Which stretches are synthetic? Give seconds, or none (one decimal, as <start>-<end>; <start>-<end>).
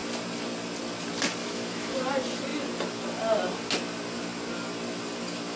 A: 1.4-2.1